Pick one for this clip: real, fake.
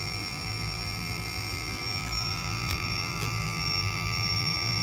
fake